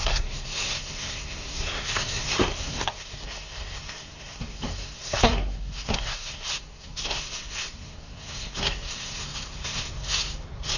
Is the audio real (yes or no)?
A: no